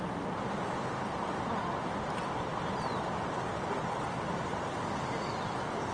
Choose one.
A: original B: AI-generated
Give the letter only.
A